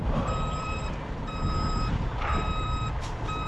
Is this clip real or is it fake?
fake